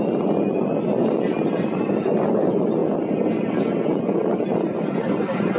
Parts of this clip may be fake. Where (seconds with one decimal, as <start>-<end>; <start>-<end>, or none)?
none